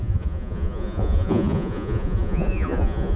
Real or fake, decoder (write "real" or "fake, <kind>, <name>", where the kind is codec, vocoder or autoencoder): fake, vocoder, Vocos